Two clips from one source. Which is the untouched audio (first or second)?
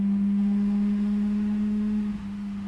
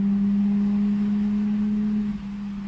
second